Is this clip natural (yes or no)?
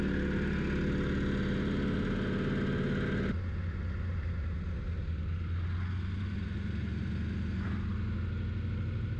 yes